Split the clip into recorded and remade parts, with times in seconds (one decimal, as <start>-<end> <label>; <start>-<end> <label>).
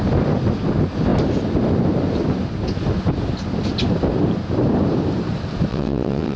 0.0-5.7 recorded; 5.7-6.4 remade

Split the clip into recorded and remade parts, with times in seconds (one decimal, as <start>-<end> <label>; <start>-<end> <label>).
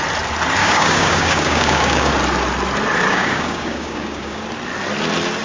0.0-0.6 recorded; 0.6-2.1 remade; 2.1-3.1 recorded; 3.1-4.4 remade; 4.4-5.4 recorded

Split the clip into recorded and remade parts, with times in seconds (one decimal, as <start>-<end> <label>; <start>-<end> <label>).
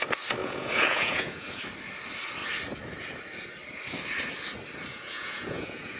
0.0-0.4 recorded; 0.4-1.6 remade; 1.6-4.9 recorded; 4.9-6.0 remade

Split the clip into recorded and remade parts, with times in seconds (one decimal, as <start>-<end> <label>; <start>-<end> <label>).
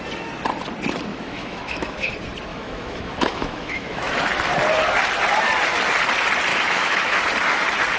0.0-1.1 recorded; 1.1-2.1 remade; 2.1-2.5 recorded; 2.5-4.2 remade; 4.2-6.5 recorded; 6.5-7.2 remade; 7.2-8.0 recorded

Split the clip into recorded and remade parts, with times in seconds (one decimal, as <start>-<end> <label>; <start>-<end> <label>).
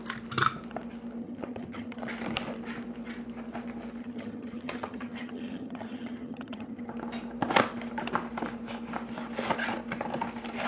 0.0-1.2 recorded; 1.2-2.0 remade; 2.0-4.0 recorded; 4.0-6.9 remade; 6.9-10.7 recorded